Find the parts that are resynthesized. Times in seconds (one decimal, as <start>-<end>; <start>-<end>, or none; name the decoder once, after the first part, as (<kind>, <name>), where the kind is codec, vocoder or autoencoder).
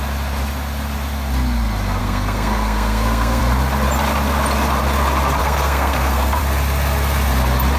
2.0-3.4 (codec, SNAC); 5.4-6.4